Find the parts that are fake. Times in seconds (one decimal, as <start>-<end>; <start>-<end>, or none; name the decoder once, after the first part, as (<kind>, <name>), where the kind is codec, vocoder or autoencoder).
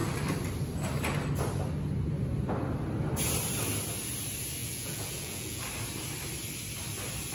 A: 4.6-5.6 (vocoder, Vocos)